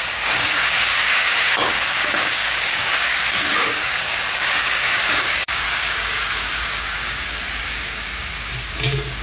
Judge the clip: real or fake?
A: fake